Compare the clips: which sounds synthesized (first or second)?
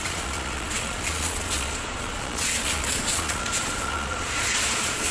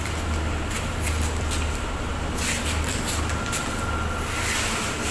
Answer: first